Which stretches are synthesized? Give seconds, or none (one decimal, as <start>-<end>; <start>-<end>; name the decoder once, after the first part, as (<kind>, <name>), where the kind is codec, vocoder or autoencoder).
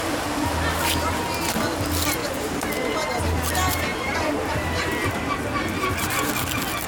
2.2-2.7 (vocoder, BigVGAN v2); 3.9-5.5